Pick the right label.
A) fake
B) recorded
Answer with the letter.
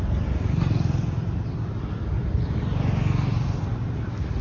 B